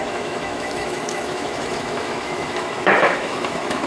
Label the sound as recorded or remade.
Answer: remade